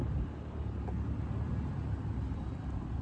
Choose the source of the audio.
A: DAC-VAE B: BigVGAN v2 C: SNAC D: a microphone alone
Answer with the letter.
D